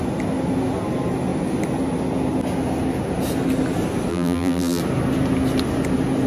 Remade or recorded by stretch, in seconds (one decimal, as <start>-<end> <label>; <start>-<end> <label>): 0.0-4.1 recorded; 4.1-4.8 remade; 4.8-6.3 recorded